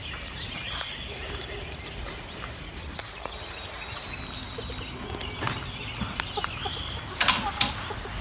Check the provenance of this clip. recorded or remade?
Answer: recorded